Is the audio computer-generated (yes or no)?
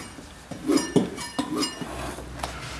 no